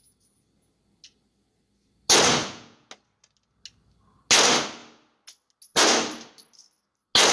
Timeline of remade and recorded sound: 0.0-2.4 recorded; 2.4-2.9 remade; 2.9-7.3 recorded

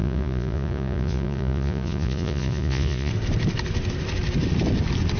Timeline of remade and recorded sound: 0.0-3.1 remade; 3.1-5.2 recorded

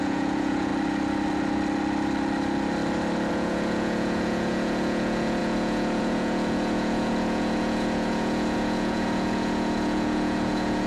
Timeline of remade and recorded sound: 0.0-0.7 remade; 0.7-3.3 recorded; 3.3-10.9 remade